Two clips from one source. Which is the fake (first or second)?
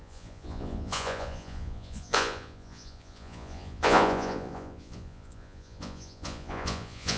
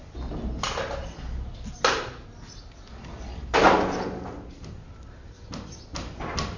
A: first